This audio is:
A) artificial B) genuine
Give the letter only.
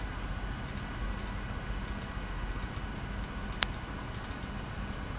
B